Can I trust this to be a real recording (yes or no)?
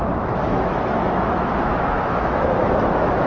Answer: no